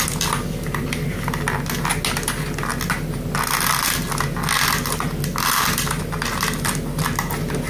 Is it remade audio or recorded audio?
recorded